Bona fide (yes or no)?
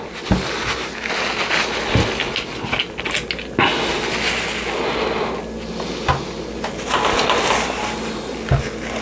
yes